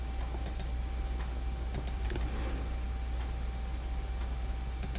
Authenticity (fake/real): real